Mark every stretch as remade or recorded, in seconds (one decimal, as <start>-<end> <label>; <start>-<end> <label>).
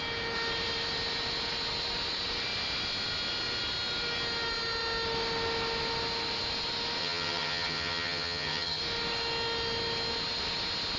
0.0-7.0 recorded; 7.0-8.8 remade; 8.8-11.0 recorded